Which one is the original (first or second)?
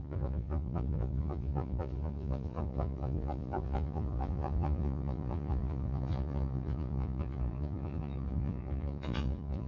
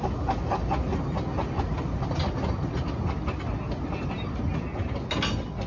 second